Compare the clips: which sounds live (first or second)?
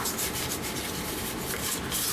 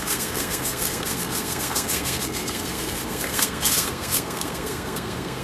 first